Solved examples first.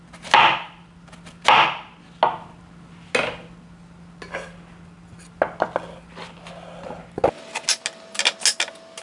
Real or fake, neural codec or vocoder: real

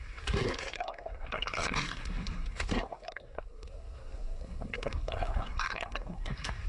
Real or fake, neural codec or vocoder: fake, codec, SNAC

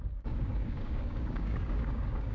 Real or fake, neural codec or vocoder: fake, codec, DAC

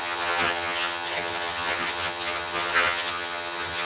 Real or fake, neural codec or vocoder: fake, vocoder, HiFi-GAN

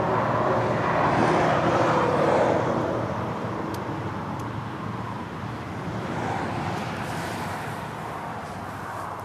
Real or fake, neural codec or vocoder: real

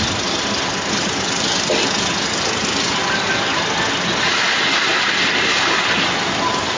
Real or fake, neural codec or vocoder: real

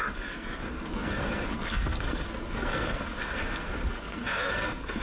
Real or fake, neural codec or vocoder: fake, codec, SNAC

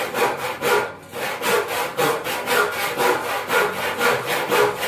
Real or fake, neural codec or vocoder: real